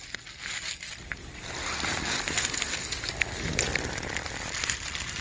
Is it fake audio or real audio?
real